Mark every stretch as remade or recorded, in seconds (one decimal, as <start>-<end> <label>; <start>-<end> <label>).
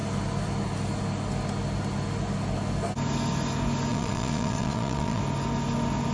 0.0-3.9 recorded; 3.9-5.2 remade; 5.2-6.1 recorded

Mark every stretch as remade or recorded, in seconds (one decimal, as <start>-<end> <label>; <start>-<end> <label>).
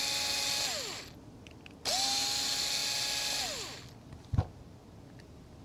0.0-5.6 recorded